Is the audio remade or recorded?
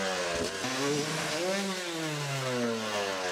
recorded